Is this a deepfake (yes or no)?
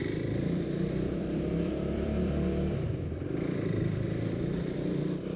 yes